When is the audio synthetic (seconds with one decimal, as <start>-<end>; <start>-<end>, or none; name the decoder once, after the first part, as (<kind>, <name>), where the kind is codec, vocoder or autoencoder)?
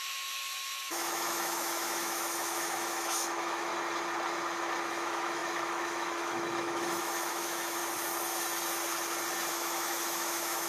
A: 0.0-3.7 (autoencoder, DAC-VAE); 4.9-7.8; 9.5-10.7